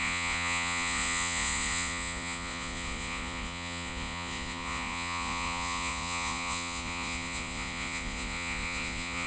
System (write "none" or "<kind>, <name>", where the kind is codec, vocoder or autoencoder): vocoder, Vocos